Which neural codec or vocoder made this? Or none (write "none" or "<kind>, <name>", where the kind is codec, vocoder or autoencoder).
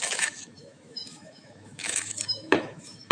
autoencoder, DAC-VAE